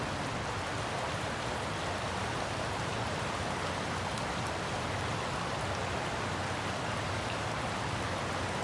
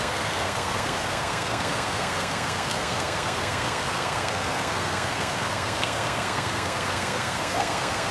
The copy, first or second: second